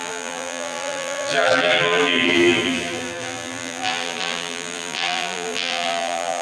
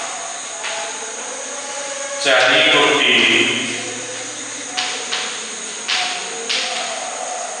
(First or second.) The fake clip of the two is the first